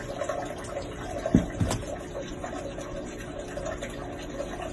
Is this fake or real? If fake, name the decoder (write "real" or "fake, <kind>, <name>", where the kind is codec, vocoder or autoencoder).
real